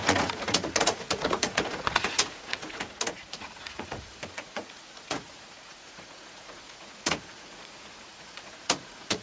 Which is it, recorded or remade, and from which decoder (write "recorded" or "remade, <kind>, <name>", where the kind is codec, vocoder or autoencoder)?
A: remade, vocoder, Vocos